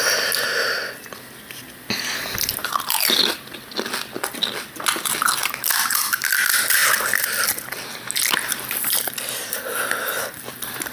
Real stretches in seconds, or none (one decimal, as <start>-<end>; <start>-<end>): 0.0-10.9